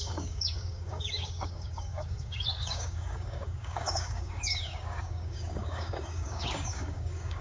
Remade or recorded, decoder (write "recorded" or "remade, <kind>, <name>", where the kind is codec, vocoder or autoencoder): remade, codec, DAC